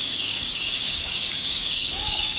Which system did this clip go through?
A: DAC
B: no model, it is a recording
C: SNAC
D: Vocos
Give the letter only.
A